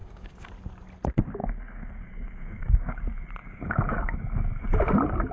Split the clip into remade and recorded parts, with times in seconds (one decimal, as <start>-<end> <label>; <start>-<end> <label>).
0.0-0.5 remade; 0.5-1.4 recorded; 1.4-3.0 remade; 3.0-3.4 recorded; 3.4-4.5 remade; 4.5-5.3 recorded